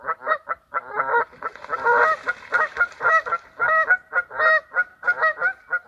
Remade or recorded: remade